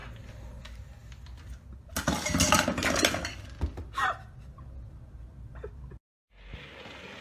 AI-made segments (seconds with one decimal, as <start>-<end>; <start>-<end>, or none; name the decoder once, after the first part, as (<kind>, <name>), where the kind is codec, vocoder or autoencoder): none